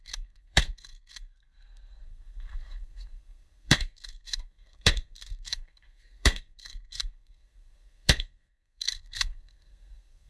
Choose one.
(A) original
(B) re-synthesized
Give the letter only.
B